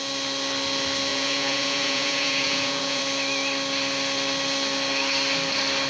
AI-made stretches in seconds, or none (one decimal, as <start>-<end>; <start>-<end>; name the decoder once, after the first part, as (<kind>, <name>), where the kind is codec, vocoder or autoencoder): 1.1-3.0 (vocoder, Vocos)